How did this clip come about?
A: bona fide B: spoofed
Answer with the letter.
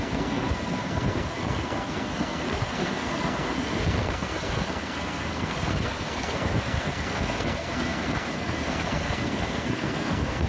B